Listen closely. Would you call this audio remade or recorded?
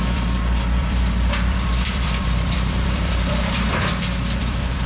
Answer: remade